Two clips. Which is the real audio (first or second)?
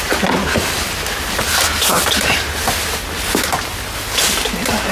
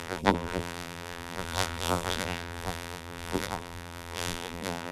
first